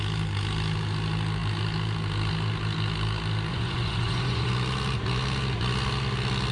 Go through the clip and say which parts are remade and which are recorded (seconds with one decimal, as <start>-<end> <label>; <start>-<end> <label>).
0.0-3.5 recorded; 3.5-4.5 remade; 4.5-6.5 recorded